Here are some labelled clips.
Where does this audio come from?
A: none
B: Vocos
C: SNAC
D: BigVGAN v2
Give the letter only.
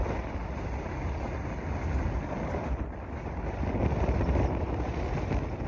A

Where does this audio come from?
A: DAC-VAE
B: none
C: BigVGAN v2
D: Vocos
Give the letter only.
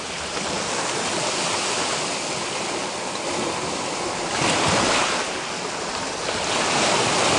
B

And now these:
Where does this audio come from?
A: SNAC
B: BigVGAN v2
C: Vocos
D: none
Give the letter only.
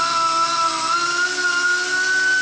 D